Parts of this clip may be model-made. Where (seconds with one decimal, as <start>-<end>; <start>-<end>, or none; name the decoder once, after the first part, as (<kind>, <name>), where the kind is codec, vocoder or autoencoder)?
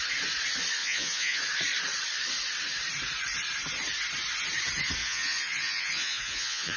0.8-1.4 (vocoder, Vocos); 5.0-6.8